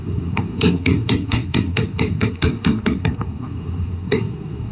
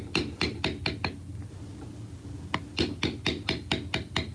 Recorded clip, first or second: second